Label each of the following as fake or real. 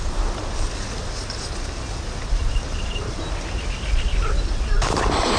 real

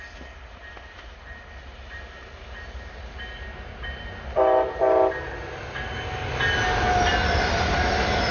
real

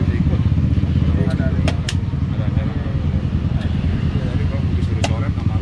real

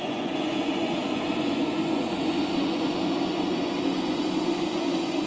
fake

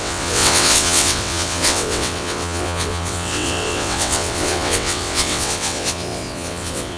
fake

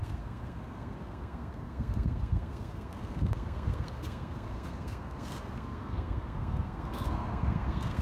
fake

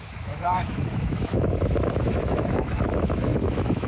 fake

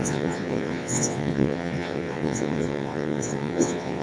fake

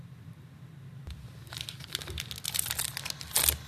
real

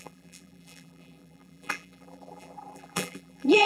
fake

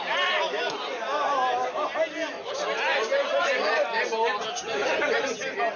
real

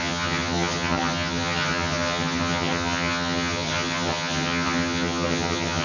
fake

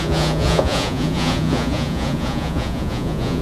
fake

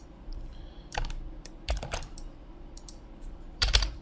fake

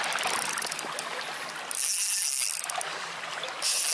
real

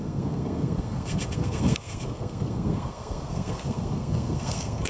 fake